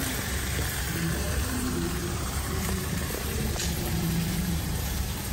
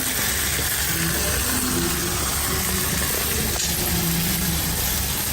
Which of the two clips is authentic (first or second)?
second